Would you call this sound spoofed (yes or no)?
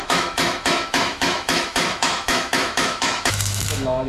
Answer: yes